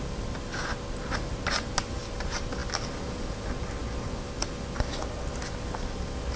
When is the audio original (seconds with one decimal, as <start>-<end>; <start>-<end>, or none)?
0.0-6.4